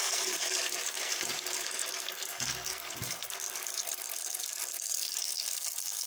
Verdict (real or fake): fake